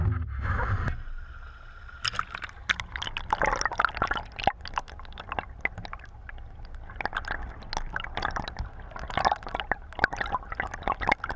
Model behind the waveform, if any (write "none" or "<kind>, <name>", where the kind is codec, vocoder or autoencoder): none